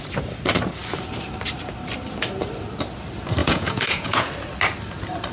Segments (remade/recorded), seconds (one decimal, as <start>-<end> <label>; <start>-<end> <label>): 0.0-3.4 recorded; 3.4-4.3 remade; 4.3-5.3 recorded